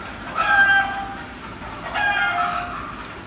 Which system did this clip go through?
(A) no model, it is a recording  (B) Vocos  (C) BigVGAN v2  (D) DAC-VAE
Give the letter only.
A